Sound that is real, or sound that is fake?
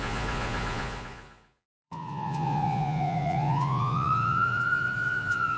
fake